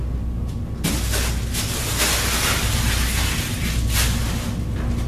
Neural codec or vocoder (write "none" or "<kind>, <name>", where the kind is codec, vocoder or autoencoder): none